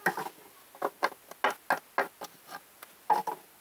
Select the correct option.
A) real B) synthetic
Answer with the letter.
A